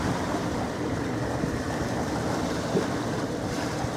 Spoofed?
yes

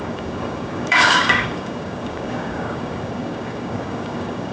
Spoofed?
yes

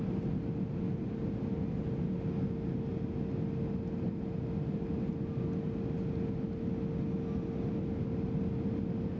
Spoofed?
no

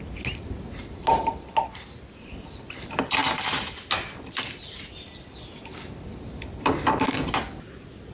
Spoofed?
no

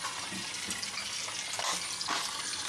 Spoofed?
no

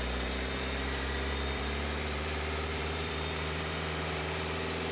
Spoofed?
yes